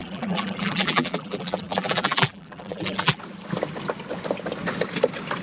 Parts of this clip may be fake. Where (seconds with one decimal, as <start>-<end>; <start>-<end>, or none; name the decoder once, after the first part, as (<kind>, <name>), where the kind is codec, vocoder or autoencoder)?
0.0-3.2 (vocoder, BigVGAN v2)